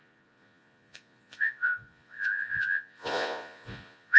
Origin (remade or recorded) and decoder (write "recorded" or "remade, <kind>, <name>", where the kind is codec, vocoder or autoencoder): remade, vocoder, Vocos